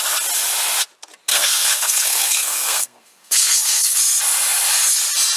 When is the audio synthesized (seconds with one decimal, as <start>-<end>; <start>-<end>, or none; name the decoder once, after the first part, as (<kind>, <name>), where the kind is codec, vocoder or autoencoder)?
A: 1.3-4.0 (codec, SNAC)